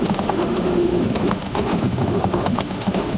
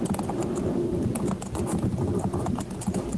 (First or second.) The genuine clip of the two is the second